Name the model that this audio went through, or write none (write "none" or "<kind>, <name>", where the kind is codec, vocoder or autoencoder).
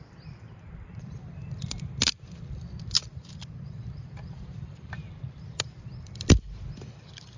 vocoder, BigVGAN v2